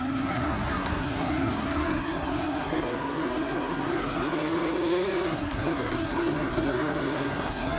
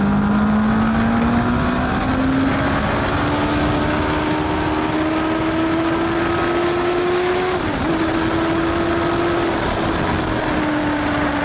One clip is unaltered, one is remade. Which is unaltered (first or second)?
second